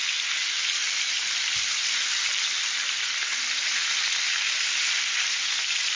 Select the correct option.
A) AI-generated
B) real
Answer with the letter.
B